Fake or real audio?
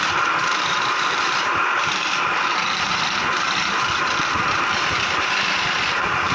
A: fake